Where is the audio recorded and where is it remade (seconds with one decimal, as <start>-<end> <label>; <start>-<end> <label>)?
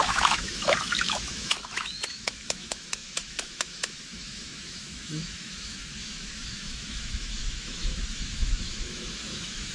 0.0-9.7 remade